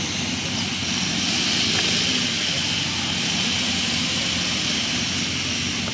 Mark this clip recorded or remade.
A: recorded